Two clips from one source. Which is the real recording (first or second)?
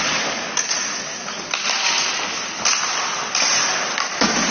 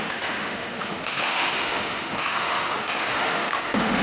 first